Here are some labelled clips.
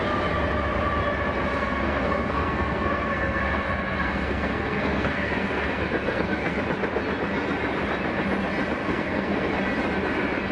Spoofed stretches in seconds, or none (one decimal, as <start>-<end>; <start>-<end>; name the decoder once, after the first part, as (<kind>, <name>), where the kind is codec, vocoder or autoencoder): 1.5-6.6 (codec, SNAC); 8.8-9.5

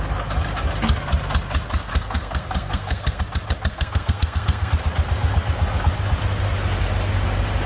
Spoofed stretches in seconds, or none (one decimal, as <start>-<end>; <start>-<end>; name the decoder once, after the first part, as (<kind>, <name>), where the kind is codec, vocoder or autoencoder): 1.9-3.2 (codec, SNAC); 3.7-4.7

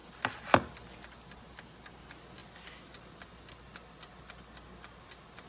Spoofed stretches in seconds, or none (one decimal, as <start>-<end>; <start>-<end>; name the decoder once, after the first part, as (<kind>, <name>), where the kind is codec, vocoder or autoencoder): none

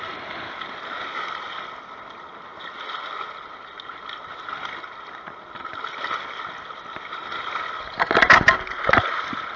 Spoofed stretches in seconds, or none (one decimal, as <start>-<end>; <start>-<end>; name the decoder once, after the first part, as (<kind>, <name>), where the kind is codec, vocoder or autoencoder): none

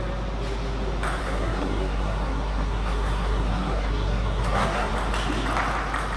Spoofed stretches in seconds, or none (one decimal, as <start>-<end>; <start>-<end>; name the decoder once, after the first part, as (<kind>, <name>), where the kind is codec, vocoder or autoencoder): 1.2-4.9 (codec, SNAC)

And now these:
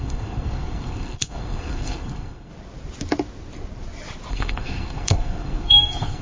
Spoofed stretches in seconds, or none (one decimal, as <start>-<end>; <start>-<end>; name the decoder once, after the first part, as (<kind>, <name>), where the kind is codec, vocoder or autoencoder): 0.0-2.5 (codec, SNAC); 4.3-6.2